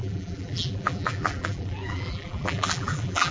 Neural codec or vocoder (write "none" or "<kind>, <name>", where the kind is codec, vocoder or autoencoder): vocoder, BigVGAN v2